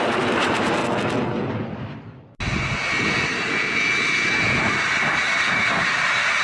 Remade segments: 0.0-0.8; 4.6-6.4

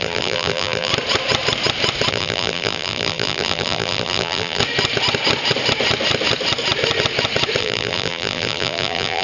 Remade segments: 0.0-0.9; 2.1-4.6; 7.6-9.2

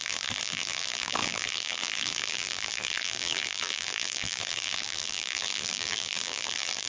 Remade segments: 0.0-6.9

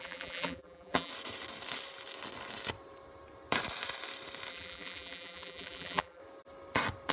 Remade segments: 0.0-1.1; 4.5-6.2

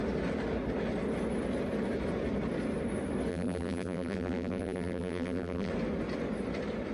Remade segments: 3.3-5.7

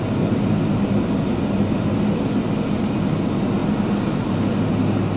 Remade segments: none

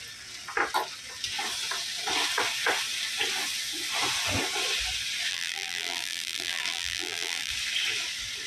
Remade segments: 5.3-7.5